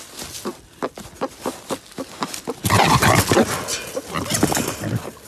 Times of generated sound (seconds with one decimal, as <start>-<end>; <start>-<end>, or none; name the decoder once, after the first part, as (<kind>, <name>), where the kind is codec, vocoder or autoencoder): none